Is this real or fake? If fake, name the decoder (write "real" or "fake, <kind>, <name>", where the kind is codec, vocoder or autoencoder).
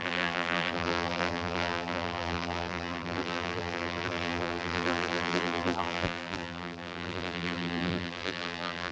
fake, vocoder, BigVGAN v2